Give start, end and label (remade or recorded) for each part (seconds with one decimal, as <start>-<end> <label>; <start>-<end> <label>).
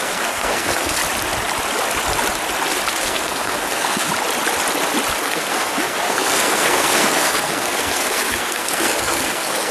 0.0-1.0 remade; 1.0-2.9 recorded; 2.9-4.1 remade; 4.1-5.2 recorded; 5.2-9.7 remade